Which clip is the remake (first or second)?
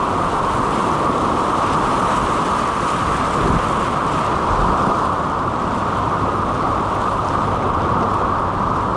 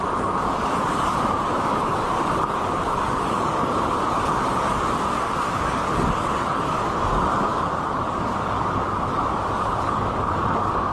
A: second